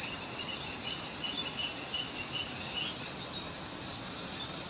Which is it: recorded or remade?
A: recorded